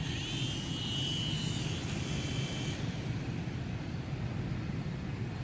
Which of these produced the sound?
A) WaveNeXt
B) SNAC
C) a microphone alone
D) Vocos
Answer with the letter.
C